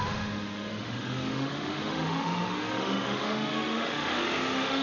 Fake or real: fake